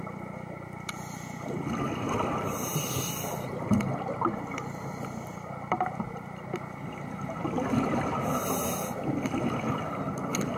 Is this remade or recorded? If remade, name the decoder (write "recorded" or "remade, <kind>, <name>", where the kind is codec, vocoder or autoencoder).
recorded